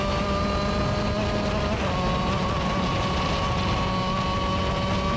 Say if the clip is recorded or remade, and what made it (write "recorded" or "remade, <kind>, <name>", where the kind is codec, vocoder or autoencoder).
recorded